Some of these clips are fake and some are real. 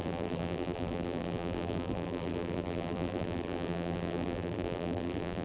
fake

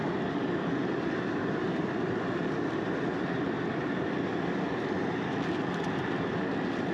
real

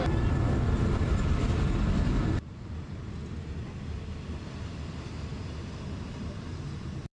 fake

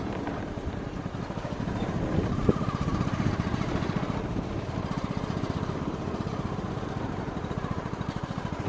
fake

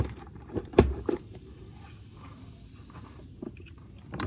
fake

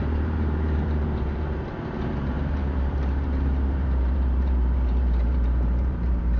fake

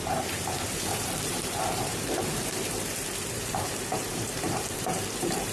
fake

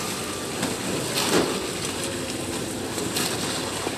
real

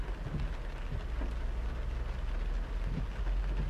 real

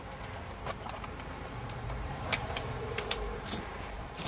fake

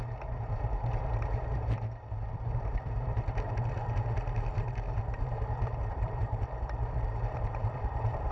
fake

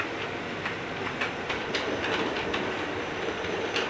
fake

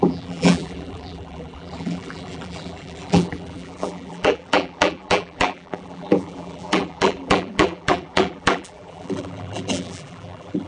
fake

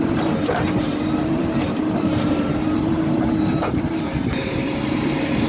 fake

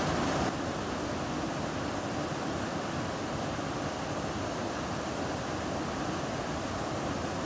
real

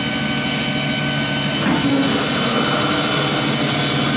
real